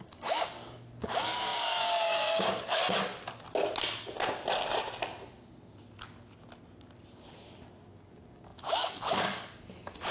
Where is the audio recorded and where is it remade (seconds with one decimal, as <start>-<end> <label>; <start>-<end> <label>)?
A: 0.0-2.8 remade; 2.8-7.9 recorded; 7.9-10.1 remade